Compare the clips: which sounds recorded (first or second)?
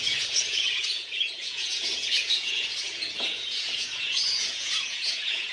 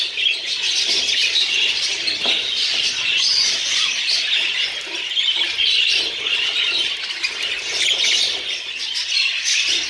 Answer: second